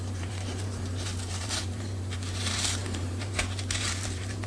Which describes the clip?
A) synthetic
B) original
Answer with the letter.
A